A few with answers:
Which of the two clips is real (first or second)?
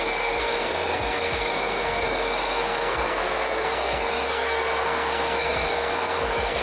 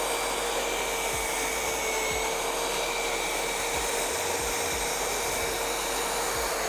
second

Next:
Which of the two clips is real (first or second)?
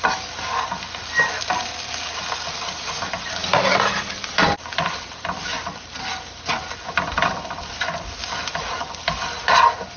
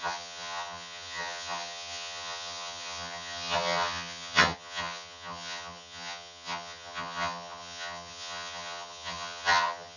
first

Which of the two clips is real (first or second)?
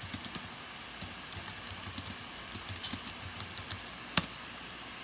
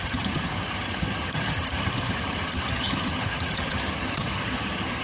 first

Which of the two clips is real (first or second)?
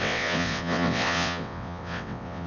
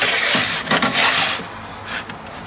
second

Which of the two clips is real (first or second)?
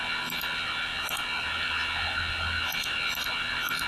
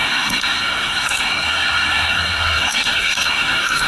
first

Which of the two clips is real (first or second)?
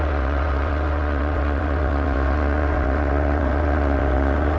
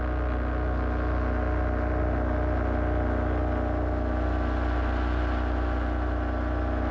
second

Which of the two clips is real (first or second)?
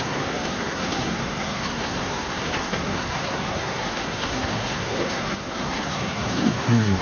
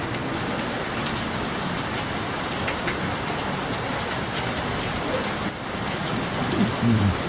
second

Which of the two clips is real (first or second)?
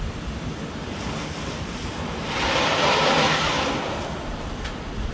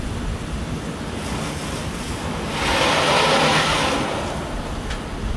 second